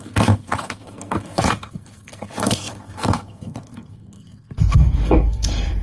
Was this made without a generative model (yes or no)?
no